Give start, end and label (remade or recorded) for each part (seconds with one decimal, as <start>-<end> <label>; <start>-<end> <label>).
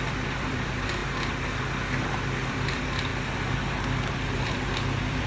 0.0-1.0 remade; 1.0-2.5 recorded; 2.5-3.1 remade; 3.1-4.1 recorded; 4.1-5.3 remade